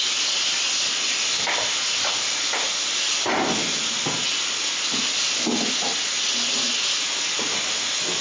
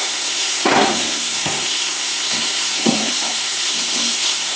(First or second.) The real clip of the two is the first